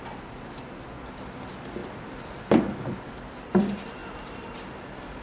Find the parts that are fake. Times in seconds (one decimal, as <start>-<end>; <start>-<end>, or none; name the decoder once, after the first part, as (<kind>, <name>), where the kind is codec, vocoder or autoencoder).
1.8-2.7 (vocoder, BigVGAN v2); 4.0-4.8